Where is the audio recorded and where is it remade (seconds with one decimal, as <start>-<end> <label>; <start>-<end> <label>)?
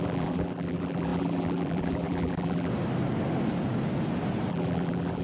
0.0-2.7 remade; 2.7-4.5 recorded; 4.5-5.2 remade